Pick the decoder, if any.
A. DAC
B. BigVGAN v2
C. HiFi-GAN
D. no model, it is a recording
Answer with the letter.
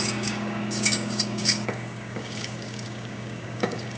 A